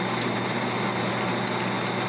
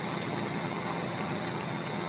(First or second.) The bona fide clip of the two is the first